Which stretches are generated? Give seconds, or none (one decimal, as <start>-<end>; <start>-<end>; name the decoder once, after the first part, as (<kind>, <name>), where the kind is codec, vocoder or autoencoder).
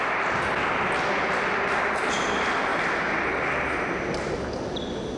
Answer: none